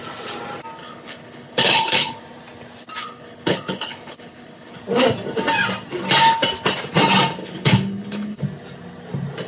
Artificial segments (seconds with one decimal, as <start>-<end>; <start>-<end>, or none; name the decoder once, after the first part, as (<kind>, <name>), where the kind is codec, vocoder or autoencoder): 0.8-2.2 (codec, HILCodec); 3.0-4.8; 7.4-8.4